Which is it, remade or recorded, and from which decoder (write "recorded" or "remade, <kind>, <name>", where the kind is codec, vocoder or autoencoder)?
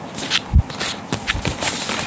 recorded